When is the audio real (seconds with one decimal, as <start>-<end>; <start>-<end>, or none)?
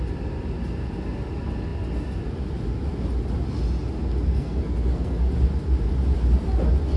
0.0-4.3; 5.3-7.0